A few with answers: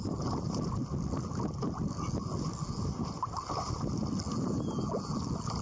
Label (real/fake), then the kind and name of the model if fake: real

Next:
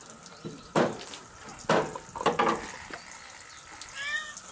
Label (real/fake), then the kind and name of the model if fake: real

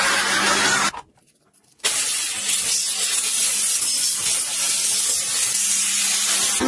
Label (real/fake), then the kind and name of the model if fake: real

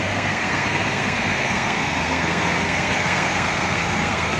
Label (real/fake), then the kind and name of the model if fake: fake, codec, SNAC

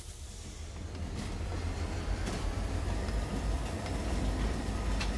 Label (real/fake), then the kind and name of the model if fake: fake, vocoder, BigVGAN v2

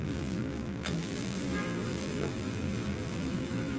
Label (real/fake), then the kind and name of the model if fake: fake, vocoder, BigVGAN v2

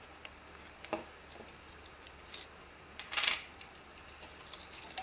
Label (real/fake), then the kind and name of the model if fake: real